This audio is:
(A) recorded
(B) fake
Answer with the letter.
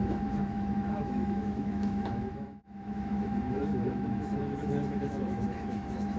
B